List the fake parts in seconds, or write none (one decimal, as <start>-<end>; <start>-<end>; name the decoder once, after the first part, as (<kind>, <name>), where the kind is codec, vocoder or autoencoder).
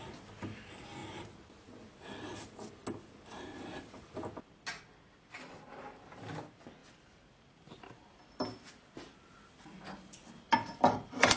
none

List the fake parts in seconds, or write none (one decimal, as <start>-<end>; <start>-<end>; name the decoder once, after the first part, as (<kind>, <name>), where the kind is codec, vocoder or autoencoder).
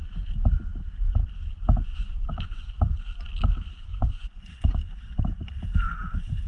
1.9-2.7 (vocoder, Vocos); 3.9-5.2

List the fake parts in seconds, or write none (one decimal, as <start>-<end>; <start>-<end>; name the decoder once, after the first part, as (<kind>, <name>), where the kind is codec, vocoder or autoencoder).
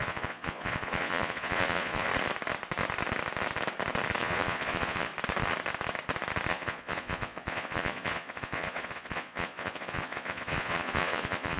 0.0-2.1 (vocoder, Vocos); 4.2-5.1; 6.5-11.6